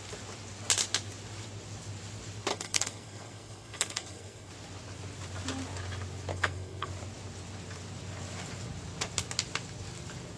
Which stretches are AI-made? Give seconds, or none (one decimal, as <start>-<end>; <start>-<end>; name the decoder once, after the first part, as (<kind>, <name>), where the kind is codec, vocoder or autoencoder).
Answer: 2.5-4.5 (codec, SNAC); 6.3-6.9